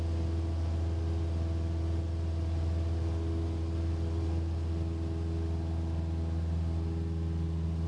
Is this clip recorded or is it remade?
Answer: recorded